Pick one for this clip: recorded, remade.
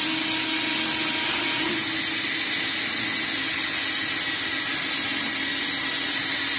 recorded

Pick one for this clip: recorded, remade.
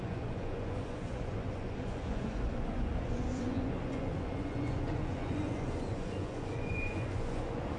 remade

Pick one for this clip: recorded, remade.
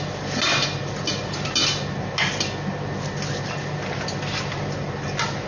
recorded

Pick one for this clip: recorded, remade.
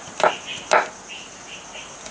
recorded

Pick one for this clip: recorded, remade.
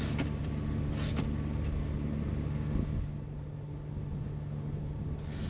recorded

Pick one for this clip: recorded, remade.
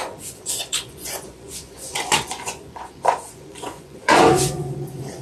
remade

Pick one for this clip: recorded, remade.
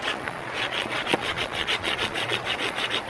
remade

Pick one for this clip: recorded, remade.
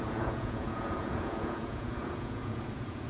remade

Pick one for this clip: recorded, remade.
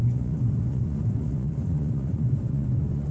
remade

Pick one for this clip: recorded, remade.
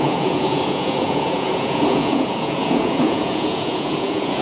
remade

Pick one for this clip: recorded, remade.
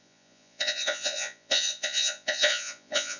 remade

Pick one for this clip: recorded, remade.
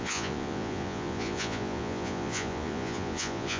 remade